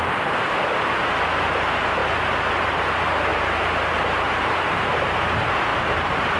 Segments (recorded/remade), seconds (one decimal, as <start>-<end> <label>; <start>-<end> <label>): 0.0-3.3 recorded; 3.3-4.9 remade; 4.9-5.7 recorded; 5.7-6.4 remade